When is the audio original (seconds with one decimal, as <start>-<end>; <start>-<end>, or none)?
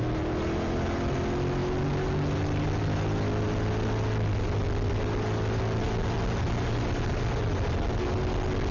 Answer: 0.0-8.7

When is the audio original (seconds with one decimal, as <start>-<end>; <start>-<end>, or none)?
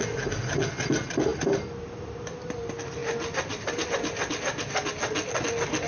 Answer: 0.0-1.3; 2.6-3.0; 4.3-5.9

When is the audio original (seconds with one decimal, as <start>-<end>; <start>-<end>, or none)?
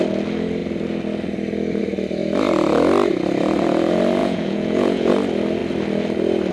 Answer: 0.0-4.2; 5.1-6.5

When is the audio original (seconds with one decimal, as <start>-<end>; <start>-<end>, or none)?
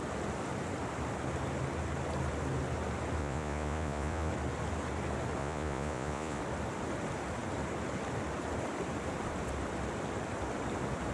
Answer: 0.0-3.2; 4.3-5.4; 6.4-11.1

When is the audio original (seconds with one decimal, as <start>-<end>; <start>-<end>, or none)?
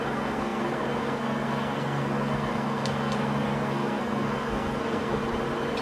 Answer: 5.2-5.8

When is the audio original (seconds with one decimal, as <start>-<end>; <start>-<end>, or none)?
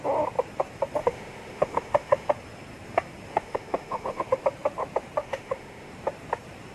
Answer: 0.0-1.0; 2.3-3.3; 4.4-5.2; 5.9-6.7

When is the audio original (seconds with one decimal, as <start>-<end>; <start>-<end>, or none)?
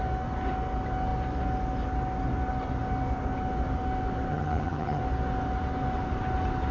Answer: 0.0-4.3; 5.0-6.7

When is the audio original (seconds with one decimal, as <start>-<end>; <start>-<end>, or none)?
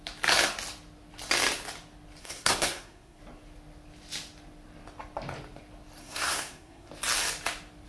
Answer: 0.0-2.2; 3.2-6.0; 6.9-7.9